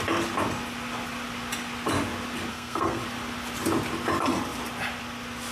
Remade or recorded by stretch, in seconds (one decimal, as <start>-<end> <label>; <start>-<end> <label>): 0.0-2.5 recorded; 2.5-3.0 remade; 3.0-5.5 recorded